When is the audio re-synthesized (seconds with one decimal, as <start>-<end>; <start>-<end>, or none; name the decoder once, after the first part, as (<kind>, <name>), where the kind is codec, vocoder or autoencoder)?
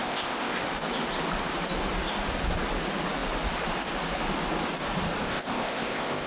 0.0-0.6 (codec, ZipCodec); 5.2-6.3